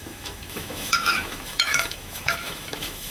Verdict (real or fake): fake